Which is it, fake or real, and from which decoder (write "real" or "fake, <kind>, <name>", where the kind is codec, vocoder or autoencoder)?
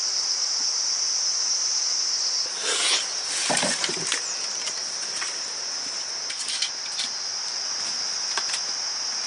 real